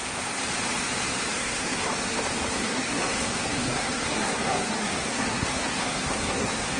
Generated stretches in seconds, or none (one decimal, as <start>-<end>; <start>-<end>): 1.3-1.9; 2.5-6.8